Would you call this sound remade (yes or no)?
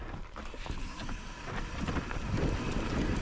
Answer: no